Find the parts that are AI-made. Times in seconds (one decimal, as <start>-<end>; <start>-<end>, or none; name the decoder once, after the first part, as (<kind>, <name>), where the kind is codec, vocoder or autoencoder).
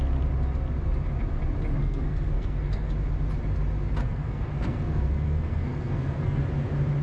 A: 1.8-2.9 (codec, SNAC); 4.0-6.4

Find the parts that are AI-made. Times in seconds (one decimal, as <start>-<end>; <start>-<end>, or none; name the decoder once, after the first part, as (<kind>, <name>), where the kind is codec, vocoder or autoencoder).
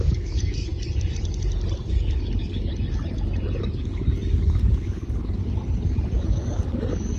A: 0.0-0.7 (codec, DAC); 1.9-2.7; 3.6-5.4; 6.3-7.2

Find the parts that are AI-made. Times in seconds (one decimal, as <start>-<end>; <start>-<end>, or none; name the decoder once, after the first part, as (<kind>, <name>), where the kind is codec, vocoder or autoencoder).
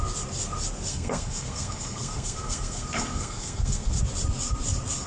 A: 0.9-4.0 (codec, SNAC)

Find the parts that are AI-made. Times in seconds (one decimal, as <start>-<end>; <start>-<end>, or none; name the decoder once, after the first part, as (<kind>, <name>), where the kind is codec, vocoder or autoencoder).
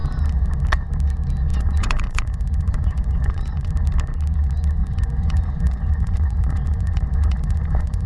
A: 1.5-3.7 (vocoder, Vocos); 4.8-8.1